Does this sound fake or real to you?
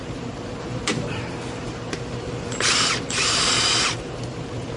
fake